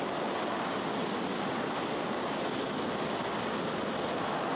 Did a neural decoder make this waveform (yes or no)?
no